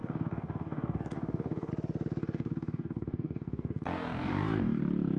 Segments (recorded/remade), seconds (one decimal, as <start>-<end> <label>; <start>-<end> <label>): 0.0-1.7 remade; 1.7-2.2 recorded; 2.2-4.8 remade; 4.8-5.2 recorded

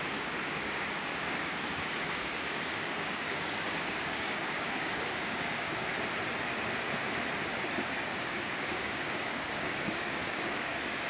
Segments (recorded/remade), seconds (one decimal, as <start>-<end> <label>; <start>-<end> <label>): 0.0-5.9 remade; 5.9-7.6 recorded; 7.6-11.1 remade

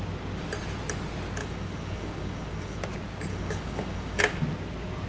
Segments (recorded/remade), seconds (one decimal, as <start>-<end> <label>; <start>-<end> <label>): 0.0-1.4 recorded; 1.4-2.8 remade; 2.8-3.3 recorded; 3.3-4.2 remade; 4.2-5.1 recorded